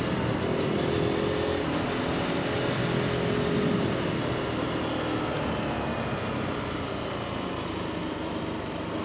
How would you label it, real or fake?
real